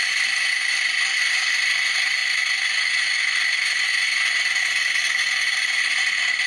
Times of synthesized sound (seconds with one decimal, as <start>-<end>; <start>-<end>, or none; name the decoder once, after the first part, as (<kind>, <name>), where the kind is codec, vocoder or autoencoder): none